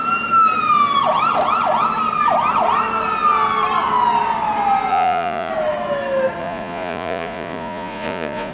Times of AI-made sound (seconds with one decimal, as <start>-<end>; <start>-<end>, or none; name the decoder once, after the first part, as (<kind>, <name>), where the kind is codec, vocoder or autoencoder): 4.9-5.5 (vocoder, Vocos); 6.4-8.5